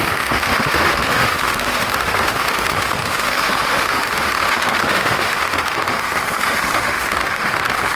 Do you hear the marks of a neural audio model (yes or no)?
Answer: yes